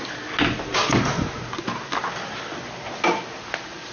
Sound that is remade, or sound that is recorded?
recorded